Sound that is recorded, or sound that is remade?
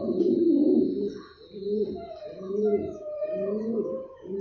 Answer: remade